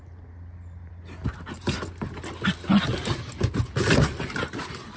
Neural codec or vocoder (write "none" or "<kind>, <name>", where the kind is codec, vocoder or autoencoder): none